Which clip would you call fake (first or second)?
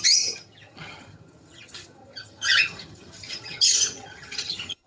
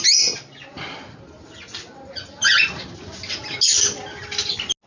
first